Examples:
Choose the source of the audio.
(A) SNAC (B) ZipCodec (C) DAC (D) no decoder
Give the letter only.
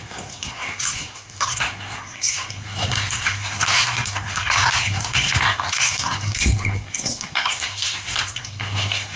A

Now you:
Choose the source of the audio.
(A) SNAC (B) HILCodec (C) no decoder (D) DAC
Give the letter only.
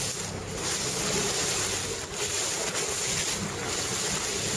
C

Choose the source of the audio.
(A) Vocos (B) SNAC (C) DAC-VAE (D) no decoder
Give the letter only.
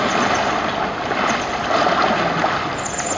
D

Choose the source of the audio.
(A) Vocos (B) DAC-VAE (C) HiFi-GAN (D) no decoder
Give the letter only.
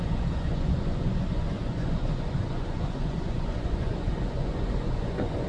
A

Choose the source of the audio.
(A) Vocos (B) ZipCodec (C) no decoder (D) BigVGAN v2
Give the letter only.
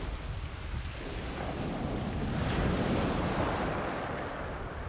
C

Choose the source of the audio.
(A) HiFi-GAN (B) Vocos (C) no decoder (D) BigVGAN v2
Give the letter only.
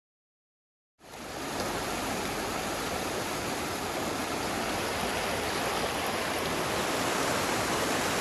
D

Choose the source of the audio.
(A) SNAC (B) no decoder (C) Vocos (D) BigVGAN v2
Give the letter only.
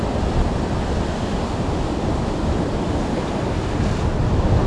B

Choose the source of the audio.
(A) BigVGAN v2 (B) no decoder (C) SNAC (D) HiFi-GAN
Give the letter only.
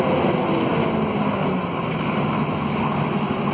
B